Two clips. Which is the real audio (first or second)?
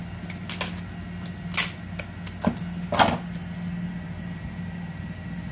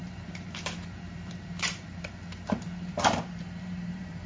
first